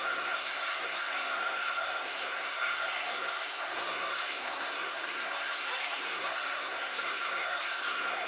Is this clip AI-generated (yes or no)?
yes